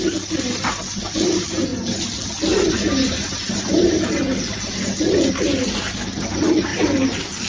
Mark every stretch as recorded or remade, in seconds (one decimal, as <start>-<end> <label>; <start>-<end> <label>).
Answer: 0.0-7.5 recorded